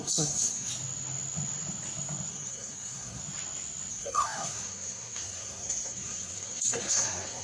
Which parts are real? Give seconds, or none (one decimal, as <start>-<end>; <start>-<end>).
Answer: 0.7-2.3; 3.2-3.9